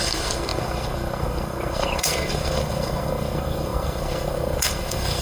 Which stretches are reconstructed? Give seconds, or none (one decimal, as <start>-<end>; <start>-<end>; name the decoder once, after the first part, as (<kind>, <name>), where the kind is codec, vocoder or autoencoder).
0.0-5.2 (codec, SNAC)